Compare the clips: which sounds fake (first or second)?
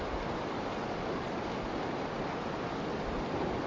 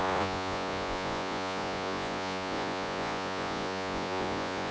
second